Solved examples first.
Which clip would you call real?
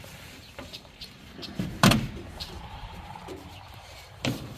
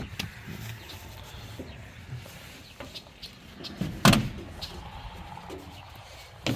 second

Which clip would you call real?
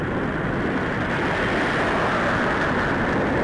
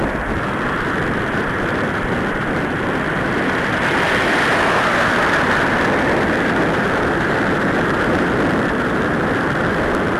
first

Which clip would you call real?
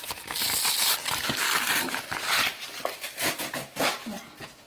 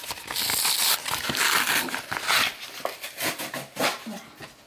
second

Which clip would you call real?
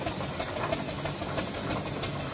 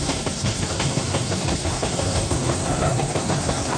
first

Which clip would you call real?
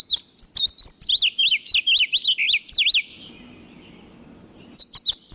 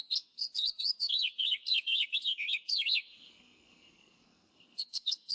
first